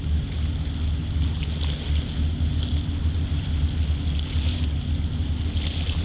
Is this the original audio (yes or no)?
yes